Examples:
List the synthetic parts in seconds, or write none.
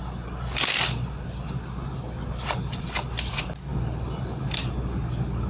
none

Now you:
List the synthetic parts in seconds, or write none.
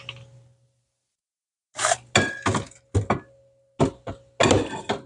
none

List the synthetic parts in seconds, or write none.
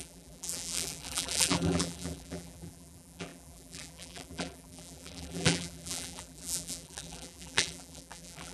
0.0-8.5 (vocoder, BigVGAN v2)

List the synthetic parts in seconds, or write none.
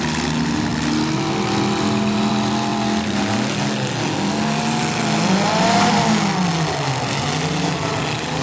none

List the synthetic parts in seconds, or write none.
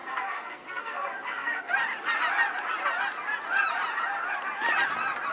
0.0-1.7 (codec, SNAC)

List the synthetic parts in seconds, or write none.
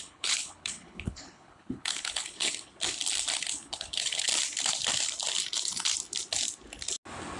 0.0-2.7 (codec, HILCodec); 3.4-4.3